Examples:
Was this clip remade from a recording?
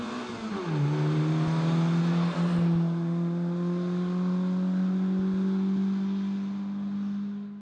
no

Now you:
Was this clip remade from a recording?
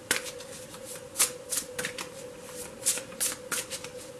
no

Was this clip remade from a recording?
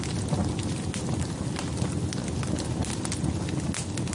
no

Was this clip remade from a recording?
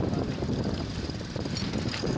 no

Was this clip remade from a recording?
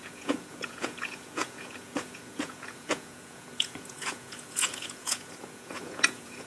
yes